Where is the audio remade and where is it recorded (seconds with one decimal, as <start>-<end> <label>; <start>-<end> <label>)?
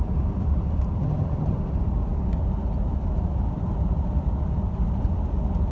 0.0-1.0 recorded; 1.0-1.6 remade; 1.6-5.7 recorded